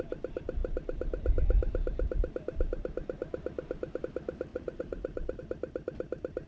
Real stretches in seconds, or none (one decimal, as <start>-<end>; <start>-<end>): 0.0-4.5; 5.4-6.5